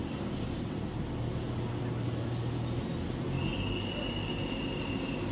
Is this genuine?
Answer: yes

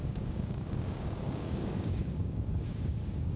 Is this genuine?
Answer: no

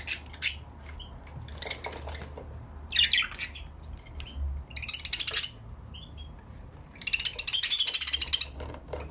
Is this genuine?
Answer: yes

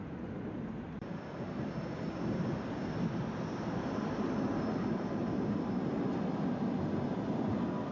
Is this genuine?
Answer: yes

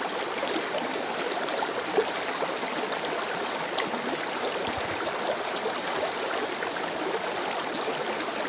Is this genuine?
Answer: yes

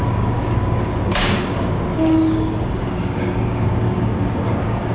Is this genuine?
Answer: no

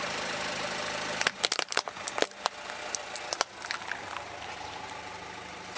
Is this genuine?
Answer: yes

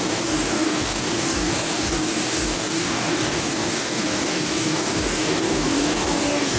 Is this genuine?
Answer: no